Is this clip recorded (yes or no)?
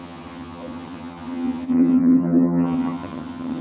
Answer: no